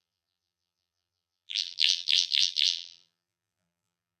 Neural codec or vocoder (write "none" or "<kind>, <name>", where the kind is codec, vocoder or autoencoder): vocoder, BigVGAN v2